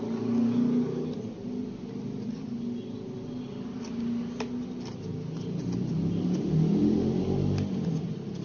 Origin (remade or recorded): recorded